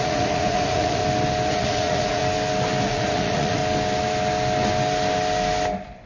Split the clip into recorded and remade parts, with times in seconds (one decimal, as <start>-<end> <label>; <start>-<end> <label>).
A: 0.0-1.0 remade; 1.0-1.5 recorded; 1.5-2.2 remade; 2.2-2.8 recorded; 2.8-3.6 remade; 3.6-6.1 recorded